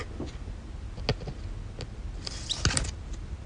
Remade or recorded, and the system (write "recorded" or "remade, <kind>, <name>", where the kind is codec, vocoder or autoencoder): recorded